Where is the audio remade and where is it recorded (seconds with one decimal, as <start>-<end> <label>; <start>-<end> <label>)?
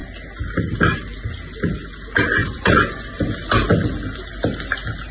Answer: 0.0-2.4 recorded; 2.4-3.1 remade; 3.1-5.1 recorded